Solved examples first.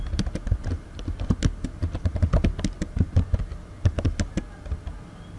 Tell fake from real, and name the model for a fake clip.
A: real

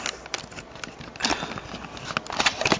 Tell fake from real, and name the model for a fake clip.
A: real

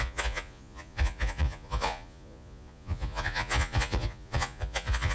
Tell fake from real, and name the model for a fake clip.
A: fake, vocoder, Vocos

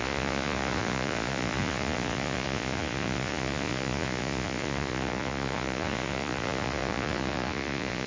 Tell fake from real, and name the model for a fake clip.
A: fake, vocoder, Vocos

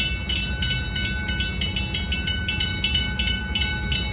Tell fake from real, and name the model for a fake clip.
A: real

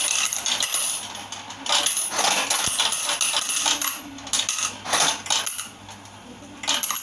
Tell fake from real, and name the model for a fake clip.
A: real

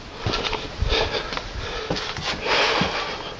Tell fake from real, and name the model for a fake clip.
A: real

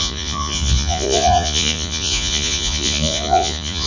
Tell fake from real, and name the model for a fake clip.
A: fake, vocoder, Vocos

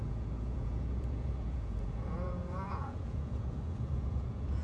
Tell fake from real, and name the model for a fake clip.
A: fake, vocoder, Vocos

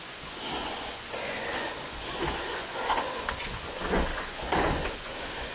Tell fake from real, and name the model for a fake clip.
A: fake, vocoder, Vocos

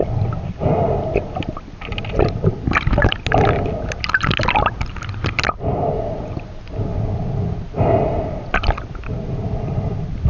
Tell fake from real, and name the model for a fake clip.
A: real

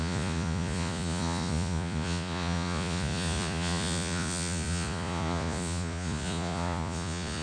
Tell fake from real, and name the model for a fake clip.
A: fake, vocoder, Vocos